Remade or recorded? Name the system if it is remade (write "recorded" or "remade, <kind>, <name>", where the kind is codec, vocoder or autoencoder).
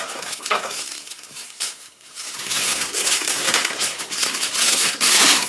remade, codec, SNAC